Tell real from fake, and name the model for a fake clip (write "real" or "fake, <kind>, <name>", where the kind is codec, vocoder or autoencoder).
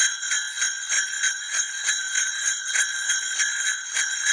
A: real